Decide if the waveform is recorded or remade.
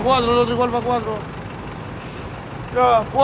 recorded